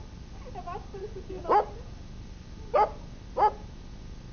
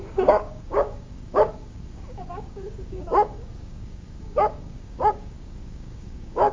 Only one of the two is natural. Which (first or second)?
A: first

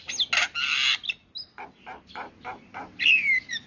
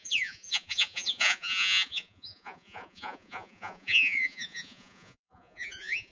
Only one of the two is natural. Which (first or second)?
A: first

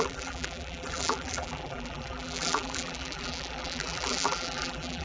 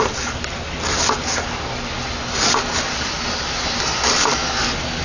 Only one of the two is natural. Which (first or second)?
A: second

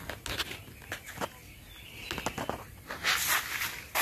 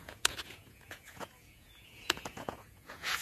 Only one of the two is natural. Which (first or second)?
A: first